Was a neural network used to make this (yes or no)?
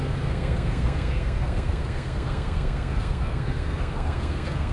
yes